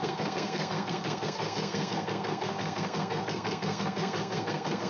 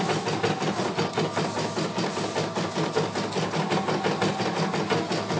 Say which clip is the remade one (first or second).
first